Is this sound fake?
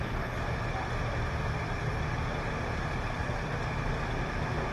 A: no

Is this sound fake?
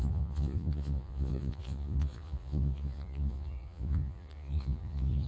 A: yes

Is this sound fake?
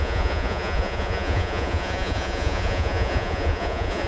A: yes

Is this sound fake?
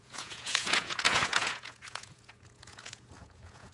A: yes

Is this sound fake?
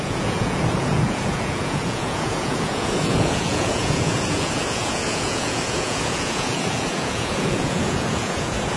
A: yes